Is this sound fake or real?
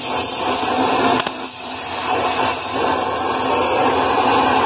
real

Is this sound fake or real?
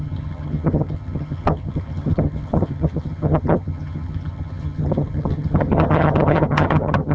fake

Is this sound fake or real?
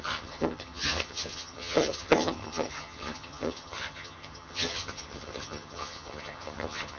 fake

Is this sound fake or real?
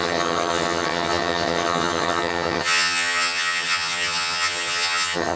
fake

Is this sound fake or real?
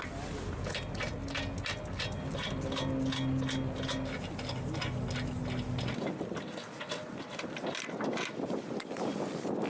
real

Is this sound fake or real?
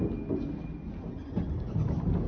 real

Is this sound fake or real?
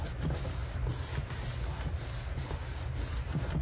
real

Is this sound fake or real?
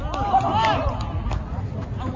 real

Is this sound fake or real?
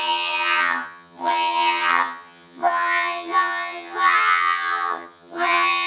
fake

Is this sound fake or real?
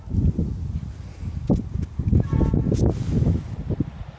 real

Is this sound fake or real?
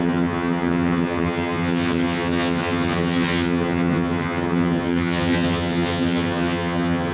fake